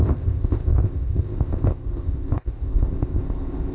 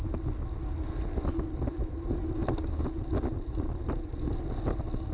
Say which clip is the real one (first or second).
second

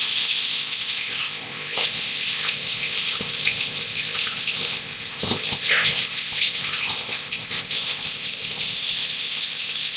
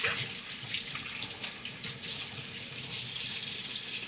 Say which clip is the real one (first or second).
second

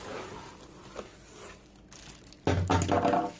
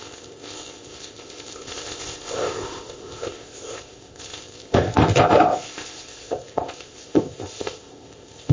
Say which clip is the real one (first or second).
first